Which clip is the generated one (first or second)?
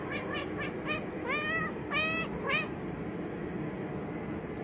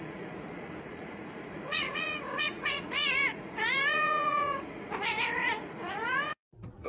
second